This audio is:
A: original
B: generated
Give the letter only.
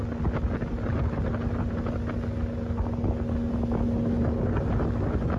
A